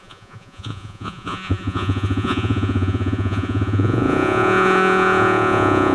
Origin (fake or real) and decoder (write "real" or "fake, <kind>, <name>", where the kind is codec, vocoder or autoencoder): fake, vocoder, Vocos